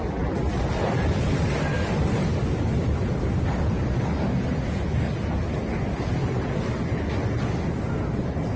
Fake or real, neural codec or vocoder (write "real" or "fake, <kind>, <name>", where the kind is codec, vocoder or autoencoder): real